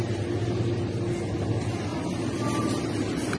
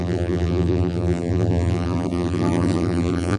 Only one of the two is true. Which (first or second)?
first